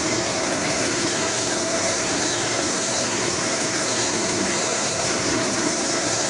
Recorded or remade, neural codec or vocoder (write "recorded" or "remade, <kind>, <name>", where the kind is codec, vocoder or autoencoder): remade, codec, SNAC